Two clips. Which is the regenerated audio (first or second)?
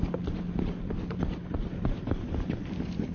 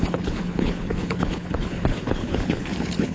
second